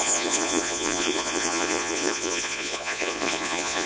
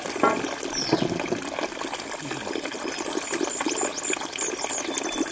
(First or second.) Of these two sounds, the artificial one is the first